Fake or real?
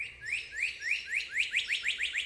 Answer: real